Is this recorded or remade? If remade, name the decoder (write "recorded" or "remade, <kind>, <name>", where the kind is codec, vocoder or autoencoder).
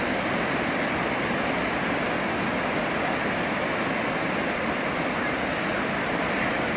recorded